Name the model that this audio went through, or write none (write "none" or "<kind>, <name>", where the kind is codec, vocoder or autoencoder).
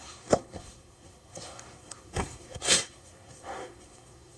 codec, SNAC